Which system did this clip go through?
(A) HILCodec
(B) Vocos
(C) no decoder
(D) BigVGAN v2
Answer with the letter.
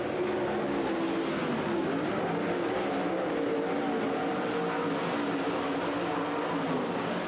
C